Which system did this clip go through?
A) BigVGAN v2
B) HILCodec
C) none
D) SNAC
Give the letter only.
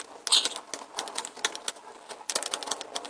C